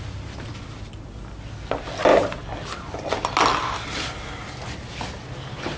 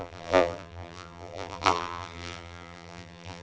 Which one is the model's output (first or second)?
second